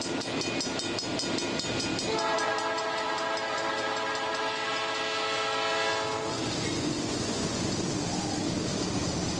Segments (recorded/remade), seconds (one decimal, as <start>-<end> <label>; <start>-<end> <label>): 0.0-6.3 recorded; 6.3-7.7 remade; 7.7-9.4 recorded